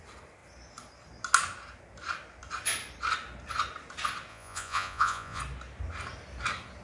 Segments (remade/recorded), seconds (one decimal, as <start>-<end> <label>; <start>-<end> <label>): 0.0-4.3 recorded; 4.3-5.4 remade; 5.4-6.8 recorded